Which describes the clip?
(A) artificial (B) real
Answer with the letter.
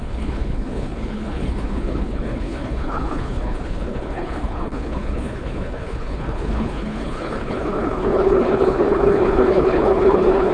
A